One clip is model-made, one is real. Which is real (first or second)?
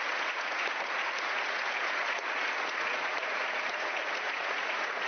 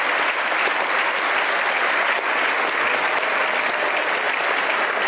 second